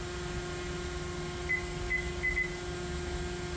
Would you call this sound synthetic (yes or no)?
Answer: no